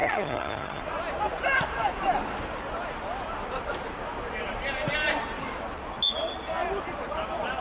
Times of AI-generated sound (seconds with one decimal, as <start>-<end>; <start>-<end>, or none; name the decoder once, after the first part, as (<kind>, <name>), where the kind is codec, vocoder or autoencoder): 0.0-0.8 (vocoder, HiFi-GAN)